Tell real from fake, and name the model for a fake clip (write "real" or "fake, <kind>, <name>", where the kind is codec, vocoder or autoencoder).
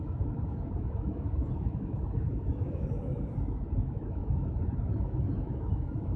fake, autoencoder, DAC-VAE